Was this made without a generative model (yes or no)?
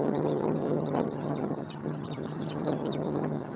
no